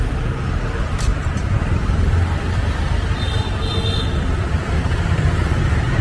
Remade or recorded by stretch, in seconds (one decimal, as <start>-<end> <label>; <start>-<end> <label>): 0.0-6.0 recorded